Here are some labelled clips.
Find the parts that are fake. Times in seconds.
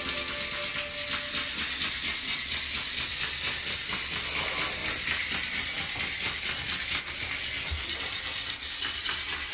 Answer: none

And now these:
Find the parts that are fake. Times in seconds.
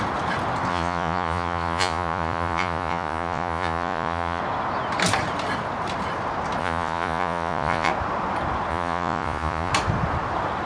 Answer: 0.7-4.4 (vocoder, Vocos); 6.6-7.9; 8.7-9.7